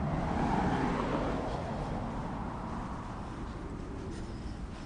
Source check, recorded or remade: recorded